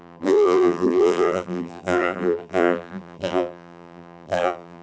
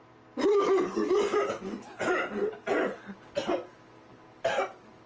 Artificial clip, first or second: first